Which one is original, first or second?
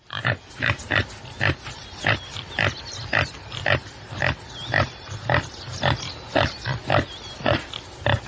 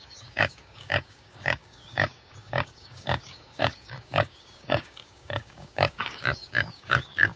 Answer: first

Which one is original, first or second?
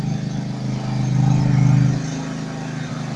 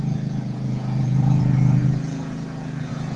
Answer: first